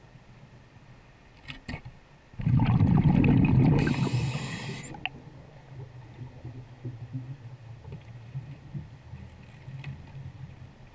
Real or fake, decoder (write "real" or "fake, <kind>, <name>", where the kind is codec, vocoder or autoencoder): real